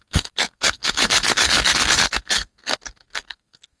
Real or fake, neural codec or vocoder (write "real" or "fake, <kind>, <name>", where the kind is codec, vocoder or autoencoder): fake, codec, SNAC